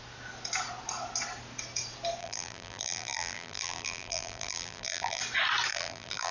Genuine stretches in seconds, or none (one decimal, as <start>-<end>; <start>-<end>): 0.0-2.2; 5.2-5.7